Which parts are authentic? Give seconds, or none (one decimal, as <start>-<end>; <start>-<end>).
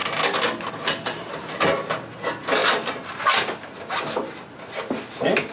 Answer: 0.0-5.5